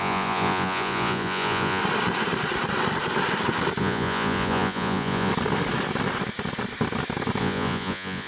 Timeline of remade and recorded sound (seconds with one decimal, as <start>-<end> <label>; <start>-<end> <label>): 0.0-1.8 remade; 1.8-3.8 recorded; 3.8-5.3 remade; 5.3-7.4 recorded; 7.4-8.3 remade